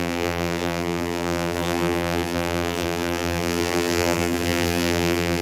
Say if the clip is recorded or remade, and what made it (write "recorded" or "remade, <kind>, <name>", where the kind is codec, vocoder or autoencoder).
remade, vocoder, BigVGAN v2